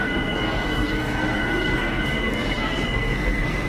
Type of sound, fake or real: fake